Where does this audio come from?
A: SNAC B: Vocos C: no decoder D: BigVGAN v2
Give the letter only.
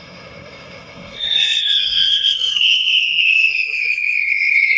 A